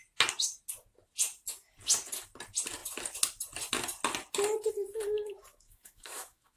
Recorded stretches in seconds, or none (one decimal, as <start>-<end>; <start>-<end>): 0.0-5.5